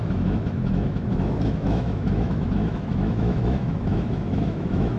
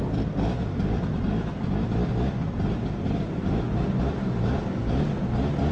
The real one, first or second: second